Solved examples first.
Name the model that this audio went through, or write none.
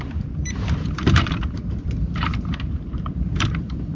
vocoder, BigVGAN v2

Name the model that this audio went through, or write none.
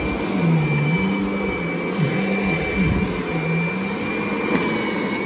none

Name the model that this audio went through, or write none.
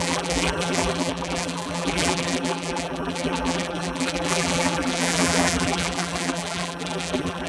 vocoder, BigVGAN v2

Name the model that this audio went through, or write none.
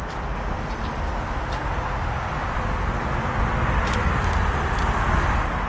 none